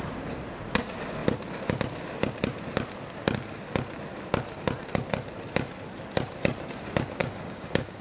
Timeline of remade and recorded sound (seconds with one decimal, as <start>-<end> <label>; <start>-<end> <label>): 0.0-7.2 recorded; 7.2-8.0 remade